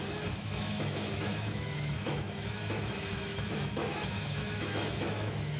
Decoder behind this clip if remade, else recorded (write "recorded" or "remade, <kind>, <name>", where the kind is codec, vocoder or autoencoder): remade, autoencoder, DAC-VAE